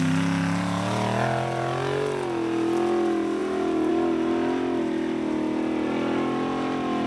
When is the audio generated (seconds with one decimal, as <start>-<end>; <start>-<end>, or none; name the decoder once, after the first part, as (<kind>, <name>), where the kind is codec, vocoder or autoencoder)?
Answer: none